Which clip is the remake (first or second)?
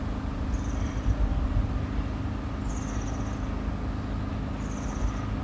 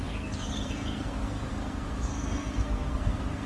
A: second